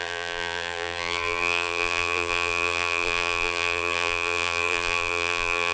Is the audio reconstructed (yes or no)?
yes